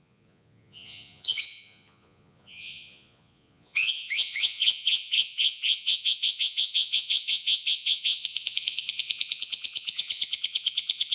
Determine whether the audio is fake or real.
fake